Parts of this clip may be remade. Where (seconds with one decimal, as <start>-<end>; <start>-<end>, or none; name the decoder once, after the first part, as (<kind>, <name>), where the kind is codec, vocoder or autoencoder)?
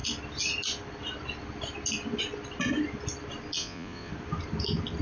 3.6-4.1 (vocoder, Vocos)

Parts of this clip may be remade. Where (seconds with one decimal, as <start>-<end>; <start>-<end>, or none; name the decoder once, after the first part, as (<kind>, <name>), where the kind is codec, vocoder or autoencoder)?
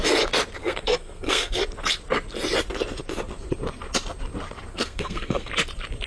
0.6-1.6 (codec, SNAC); 4.7-5.5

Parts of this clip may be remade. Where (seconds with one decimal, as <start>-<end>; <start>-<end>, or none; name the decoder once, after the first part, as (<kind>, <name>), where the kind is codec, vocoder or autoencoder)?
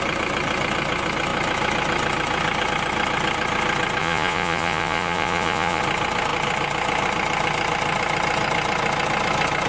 4.0-5.8 (vocoder, Vocos)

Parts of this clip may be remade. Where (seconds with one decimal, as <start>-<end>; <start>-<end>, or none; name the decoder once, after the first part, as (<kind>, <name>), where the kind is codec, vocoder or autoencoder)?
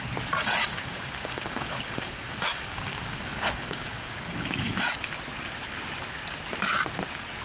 0.7-4.8 (codec, DAC)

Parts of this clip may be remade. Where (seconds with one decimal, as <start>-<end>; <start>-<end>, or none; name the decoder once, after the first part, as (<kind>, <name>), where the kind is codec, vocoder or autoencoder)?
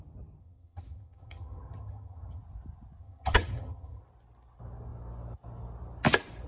0.4-2.4 (vocoder, HiFi-GAN); 3.0-4.0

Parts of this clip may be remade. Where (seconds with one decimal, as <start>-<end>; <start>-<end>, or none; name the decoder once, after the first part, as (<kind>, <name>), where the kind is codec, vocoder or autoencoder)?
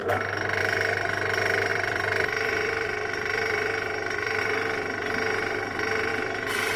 1.7-4.4 (vocoder, BigVGAN v2); 6.1-6.8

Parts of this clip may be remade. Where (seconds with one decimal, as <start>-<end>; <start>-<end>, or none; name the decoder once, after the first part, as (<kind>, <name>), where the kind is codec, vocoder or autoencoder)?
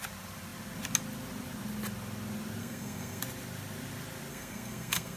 2.6-3.2 (codec, SNAC); 4.3-5.2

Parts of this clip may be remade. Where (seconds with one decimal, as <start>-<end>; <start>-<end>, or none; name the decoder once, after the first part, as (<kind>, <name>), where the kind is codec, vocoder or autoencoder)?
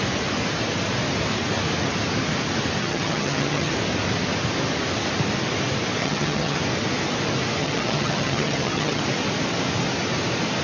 2.8-3.7 (vocoder, HiFi-GAN); 6.0-6.6; 7.6-9.0